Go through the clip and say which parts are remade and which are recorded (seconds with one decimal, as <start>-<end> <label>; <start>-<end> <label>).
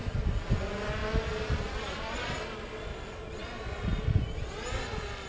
0.0-5.3 recorded